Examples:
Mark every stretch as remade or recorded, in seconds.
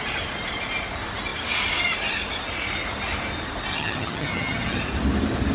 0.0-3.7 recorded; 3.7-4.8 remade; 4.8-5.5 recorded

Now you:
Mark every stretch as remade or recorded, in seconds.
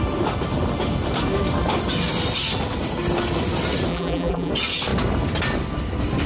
0.0-3.9 recorded; 3.9-4.5 remade; 4.5-6.3 recorded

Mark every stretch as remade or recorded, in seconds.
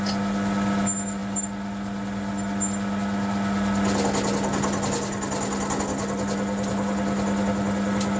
0.0-8.2 recorded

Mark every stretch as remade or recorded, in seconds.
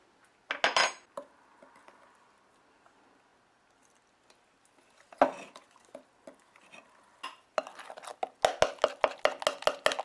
0.0-10.0 recorded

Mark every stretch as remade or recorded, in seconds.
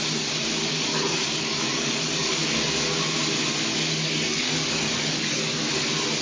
0.0-0.6 recorded; 0.6-2.4 remade; 2.4-3.7 recorded; 3.7-5.7 remade; 5.7-6.2 recorded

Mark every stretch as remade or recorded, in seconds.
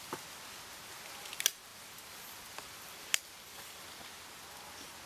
0.0-5.1 recorded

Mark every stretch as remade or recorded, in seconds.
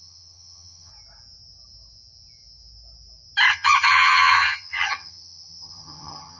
0.0-0.9 remade; 0.9-3.5 recorded; 3.5-6.4 remade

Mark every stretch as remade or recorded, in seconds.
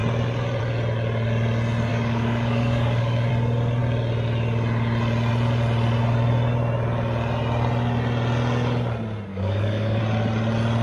0.0-1.9 recorded; 1.9-3.3 remade; 3.3-9.3 recorded; 9.3-10.0 remade; 10.0-10.8 recorded